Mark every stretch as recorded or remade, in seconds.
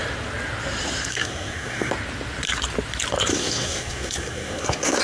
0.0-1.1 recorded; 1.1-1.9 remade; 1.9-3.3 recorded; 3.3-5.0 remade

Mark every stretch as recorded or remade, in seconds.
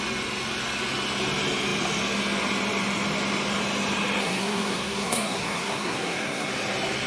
0.0-4.2 recorded; 4.2-6.5 remade; 6.5-7.1 recorded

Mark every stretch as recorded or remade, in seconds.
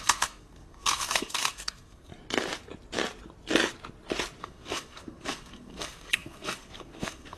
0.0-2.1 remade; 2.1-4.4 recorded; 4.4-7.4 remade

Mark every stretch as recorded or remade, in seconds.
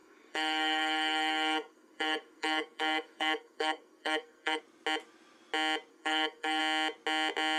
0.0-4.6 remade; 4.6-5.9 recorded; 5.9-6.6 remade; 6.6-7.6 recorded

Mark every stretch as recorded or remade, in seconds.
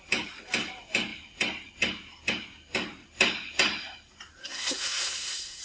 0.0-4.4 recorded; 4.4-5.6 remade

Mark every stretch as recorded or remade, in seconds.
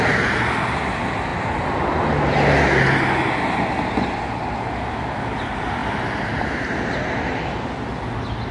0.0-8.5 recorded